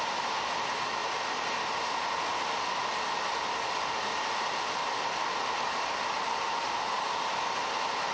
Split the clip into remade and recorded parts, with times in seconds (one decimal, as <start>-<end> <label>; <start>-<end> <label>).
0.0-8.1 recorded